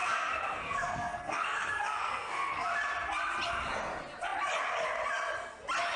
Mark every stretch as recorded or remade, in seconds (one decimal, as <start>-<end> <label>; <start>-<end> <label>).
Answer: 0.0-2.7 remade; 2.7-6.0 recorded